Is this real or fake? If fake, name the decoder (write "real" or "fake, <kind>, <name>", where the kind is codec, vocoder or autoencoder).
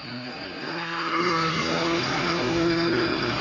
fake, codec, SNAC